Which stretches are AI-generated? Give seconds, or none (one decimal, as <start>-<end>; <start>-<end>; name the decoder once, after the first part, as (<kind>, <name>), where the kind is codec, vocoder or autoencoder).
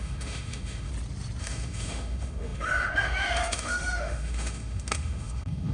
0.0-0.9 (autoencoder, DAC-VAE); 1.4-5.7